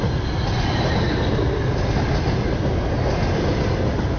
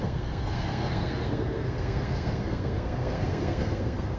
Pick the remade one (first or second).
second